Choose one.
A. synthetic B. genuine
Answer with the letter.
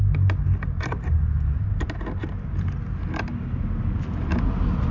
B